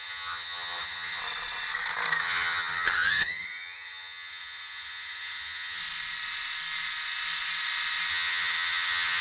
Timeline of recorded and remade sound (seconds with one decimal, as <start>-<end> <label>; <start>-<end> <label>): 0.0-1.2 remade; 1.2-2.2 recorded; 2.2-5.8 remade; 5.8-8.1 recorded; 8.1-9.2 remade